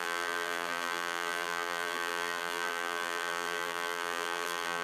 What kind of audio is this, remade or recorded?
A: remade